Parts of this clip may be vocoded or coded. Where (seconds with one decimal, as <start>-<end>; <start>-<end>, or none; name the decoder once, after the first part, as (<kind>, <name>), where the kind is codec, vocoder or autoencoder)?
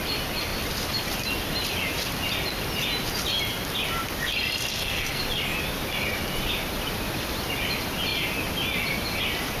4.7-5.2 (codec, SNAC)